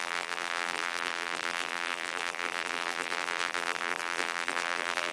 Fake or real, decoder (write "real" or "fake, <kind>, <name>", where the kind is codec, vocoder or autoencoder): fake, vocoder, BigVGAN v2